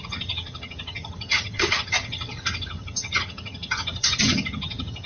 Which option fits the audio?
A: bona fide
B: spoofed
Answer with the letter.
B